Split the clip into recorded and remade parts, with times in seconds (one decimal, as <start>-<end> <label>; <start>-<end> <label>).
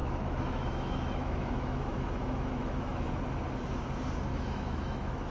0.0-3.2 remade; 3.2-4.3 recorded; 4.3-5.3 remade